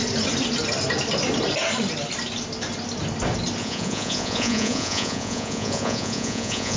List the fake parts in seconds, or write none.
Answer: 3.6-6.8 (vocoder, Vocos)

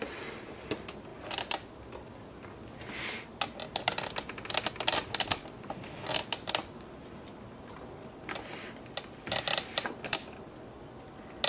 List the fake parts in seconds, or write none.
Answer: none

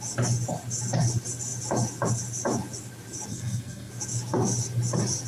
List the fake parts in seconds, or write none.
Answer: 3.3-3.9 (codec, SNAC)